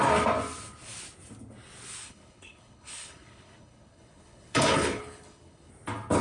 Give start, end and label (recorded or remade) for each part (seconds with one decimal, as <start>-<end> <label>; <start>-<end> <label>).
0.0-2.0 recorded; 2.0-5.7 remade; 5.7-6.2 recorded